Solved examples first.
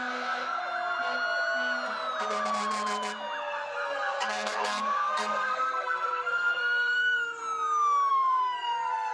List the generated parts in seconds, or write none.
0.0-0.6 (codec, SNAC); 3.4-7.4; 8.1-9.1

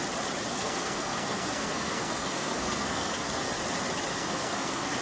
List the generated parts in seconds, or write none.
0.5-3.5 (codec, SNAC); 4.1-5.0